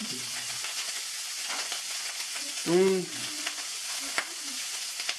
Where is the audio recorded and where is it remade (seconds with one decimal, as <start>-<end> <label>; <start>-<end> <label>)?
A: 0.0-5.2 remade